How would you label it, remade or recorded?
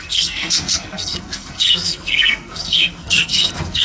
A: remade